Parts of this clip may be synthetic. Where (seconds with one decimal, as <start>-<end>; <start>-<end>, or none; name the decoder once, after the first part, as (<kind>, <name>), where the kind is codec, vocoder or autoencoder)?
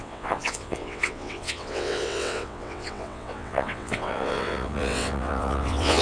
0.0-6.0 (vocoder, WaveNeXt)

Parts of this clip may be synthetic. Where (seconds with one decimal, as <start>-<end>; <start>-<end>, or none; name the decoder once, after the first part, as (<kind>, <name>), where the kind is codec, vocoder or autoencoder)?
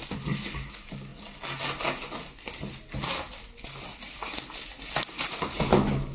none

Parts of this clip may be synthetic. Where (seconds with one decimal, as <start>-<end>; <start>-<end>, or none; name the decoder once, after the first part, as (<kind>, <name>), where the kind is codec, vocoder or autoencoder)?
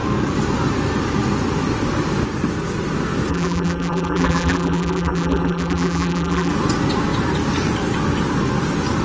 3.3-6.5 (vocoder, BigVGAN v2)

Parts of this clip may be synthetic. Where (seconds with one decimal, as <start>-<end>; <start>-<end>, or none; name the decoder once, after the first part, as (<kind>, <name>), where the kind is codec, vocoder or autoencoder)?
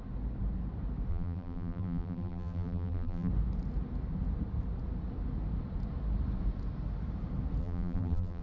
1.1-3.3 (vocoder, BigVGAN v2); 7.6-8.4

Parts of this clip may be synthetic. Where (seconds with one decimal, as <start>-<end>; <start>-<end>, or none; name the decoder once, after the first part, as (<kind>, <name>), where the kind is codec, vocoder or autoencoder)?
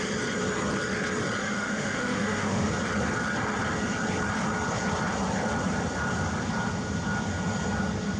1.4-2.7 (autoencoder, DAC-VAE)